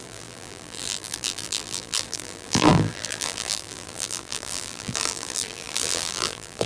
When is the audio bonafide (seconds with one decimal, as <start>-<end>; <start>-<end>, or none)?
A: none